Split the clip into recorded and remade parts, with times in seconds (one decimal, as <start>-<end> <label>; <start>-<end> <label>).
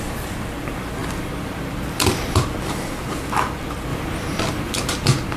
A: 0.0-1.0 recorded; 1.0-1.6 remade; 1.6-3.9 recorded; 3.9-4.9 remade; 4.9-5.4 recorded